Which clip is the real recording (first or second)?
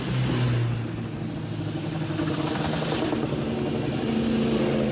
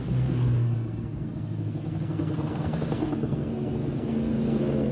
first